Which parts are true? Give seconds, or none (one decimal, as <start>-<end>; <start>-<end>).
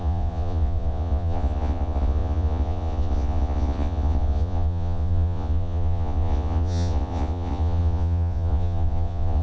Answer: none